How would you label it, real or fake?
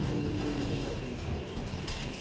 fake